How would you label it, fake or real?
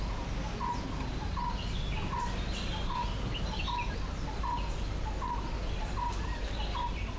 real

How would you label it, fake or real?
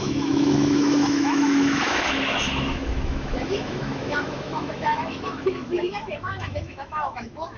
fake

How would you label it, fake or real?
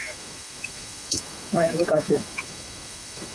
fake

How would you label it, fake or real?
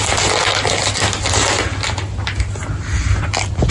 real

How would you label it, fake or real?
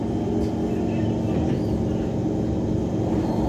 real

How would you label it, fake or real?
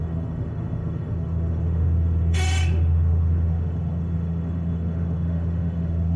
fake